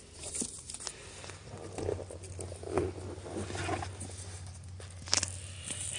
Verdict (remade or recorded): recorded